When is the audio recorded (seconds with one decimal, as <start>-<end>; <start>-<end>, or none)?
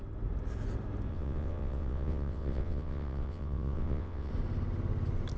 0.0-1.1; 4.3-5.4